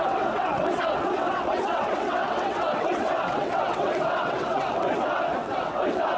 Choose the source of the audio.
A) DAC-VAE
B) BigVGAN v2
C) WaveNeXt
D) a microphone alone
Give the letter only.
C